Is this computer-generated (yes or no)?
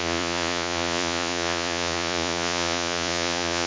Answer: yes